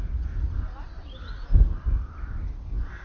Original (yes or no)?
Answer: yes